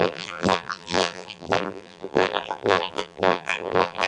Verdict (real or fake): fake